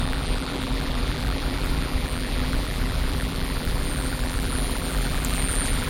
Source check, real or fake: fake